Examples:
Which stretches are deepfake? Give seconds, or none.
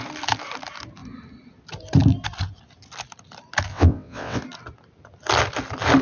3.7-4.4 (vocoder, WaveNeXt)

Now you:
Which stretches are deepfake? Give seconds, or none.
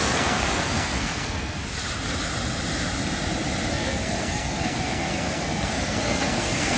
0.0-1.6 (codec, SNAC); 3.7-6.8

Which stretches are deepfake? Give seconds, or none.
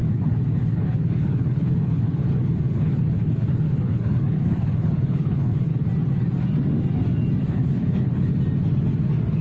0.0-5.7 (codec, HILCodec); 7.4-8.3